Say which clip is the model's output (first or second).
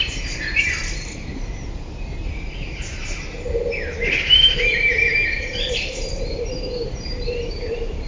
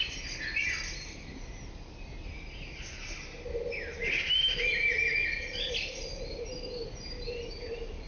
first